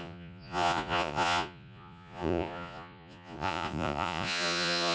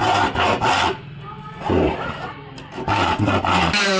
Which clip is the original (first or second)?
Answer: second